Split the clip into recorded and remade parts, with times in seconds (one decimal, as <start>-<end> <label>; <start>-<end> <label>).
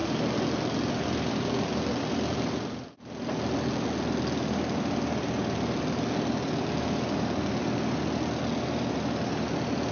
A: 0.0-9.9 recorded